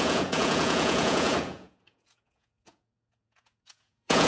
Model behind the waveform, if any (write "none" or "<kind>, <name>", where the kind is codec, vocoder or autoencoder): vocoder, Vocos